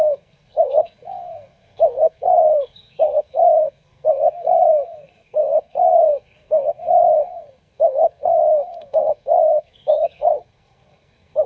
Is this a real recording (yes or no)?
no